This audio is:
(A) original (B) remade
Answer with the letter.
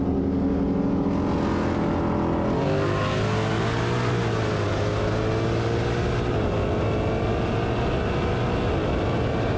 A